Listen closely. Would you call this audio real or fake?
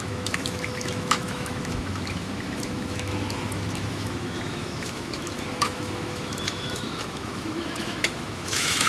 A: fake